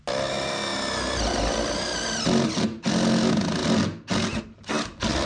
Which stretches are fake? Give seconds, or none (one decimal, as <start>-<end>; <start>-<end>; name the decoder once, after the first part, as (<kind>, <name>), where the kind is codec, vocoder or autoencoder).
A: none